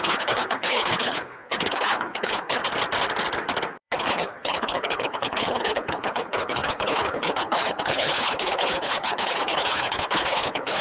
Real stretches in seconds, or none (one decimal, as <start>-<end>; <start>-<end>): 2.6-3.8